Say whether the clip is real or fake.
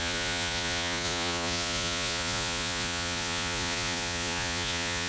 fake